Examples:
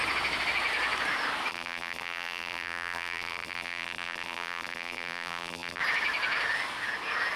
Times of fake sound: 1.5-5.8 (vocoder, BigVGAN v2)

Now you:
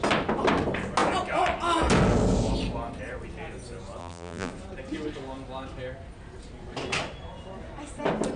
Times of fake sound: 4.0-4.5 (vocoder, BigVGAN v2)

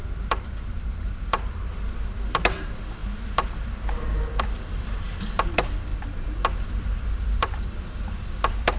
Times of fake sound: 0.0-5.9 (vocoder, BigVGAN v2); 6.6-8.8